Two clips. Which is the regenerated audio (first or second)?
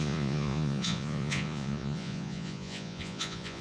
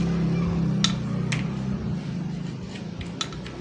first